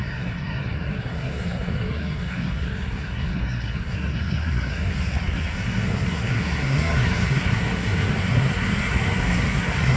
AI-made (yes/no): yes